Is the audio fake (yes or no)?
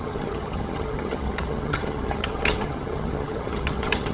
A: yes